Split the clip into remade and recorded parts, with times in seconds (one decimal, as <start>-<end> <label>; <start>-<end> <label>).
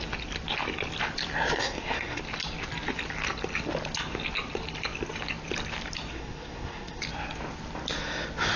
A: 0.0-1.6 recorded; 1.6-2.2 remade; 2.2-6.1 recorded; 6.1-7.0 remade; 7.0-8.6 recorded